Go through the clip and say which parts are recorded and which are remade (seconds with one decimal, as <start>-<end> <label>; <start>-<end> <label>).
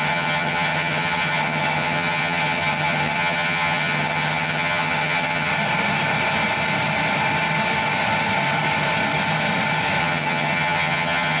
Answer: 0.0-5.5 remade; 5.5-10.0 recorded; 10.0-11.4 remade